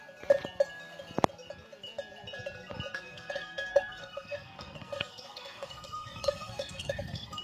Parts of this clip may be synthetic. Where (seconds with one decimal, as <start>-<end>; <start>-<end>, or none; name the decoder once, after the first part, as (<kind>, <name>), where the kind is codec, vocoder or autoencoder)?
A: 2.9-7.4 (codec, SNAC)